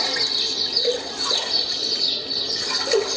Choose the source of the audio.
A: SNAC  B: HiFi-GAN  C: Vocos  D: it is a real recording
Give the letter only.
D